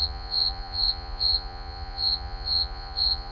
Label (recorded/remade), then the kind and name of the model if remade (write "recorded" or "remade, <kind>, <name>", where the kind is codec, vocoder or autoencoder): remade, vocoder, Vocos